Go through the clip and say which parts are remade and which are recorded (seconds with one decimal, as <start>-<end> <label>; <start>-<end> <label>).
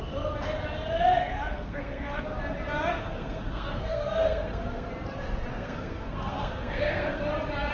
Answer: 0.0-1.1 recorded; 1.1-2.2 remade; 2.2-2.9 recorded; 2.9-4.9 remade; 4.9-5.5 recorded; 5.5-7.2 remade; 7.2-7.7 recorded